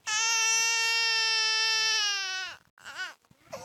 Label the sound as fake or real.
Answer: real